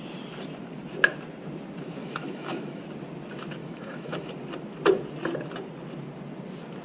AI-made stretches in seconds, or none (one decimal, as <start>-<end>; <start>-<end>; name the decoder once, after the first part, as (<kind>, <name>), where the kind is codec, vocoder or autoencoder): 2.0-2.8 (autoencoder, DAC-VAE); 3.6-4.3